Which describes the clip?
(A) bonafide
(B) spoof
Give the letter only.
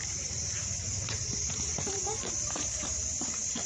B